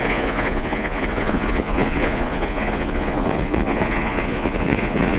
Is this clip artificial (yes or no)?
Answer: yes